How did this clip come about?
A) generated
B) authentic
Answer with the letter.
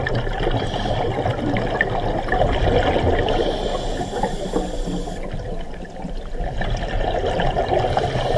B